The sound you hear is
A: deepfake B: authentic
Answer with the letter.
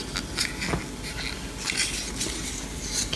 B